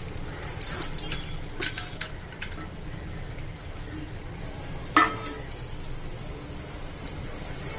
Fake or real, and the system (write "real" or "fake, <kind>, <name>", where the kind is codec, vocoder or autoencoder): real